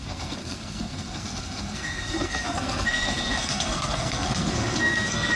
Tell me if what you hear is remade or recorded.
remade